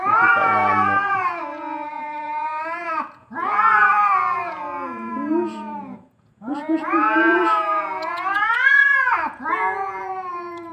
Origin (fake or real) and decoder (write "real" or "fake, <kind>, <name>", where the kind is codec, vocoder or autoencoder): fake, vocoder, Vocos